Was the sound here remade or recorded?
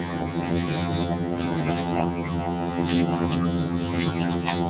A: remade